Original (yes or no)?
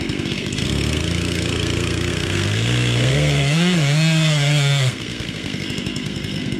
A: no